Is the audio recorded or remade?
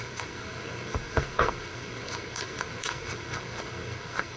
remade